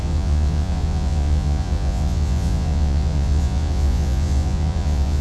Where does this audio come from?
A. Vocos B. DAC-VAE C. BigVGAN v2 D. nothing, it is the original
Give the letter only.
A